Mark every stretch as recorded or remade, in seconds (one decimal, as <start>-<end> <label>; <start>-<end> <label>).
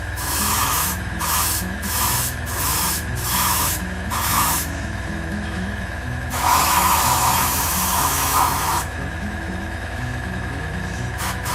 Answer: 0.0-11.5 remade